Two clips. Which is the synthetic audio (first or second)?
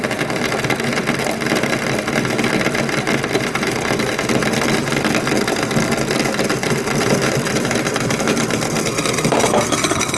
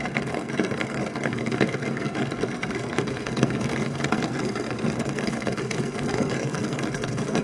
second